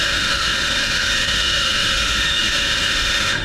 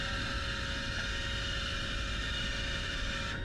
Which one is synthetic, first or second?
first